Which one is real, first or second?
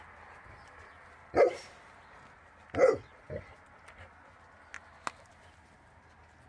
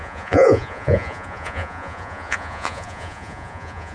first